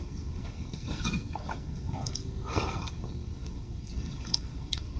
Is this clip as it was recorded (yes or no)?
no